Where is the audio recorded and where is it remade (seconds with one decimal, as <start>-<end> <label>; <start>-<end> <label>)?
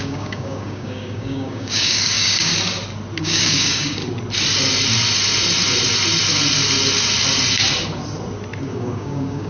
0.0-2.5 remade; 2.5-3.2 recorded; 3.2-4.0 remade; 4.0-8.6 recorded; 8.6-9.5 remade